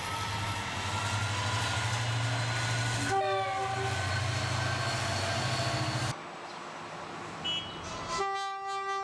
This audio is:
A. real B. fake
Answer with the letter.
A